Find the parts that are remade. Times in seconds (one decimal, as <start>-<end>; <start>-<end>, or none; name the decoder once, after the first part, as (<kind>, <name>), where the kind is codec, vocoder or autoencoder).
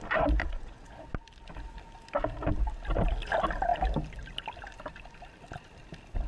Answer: 0.4-0.9 (vocoder, Vocos)